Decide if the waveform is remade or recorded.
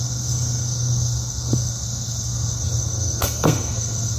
remade